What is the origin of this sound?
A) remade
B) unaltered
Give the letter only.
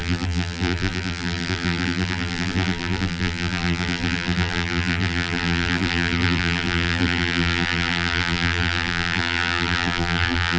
A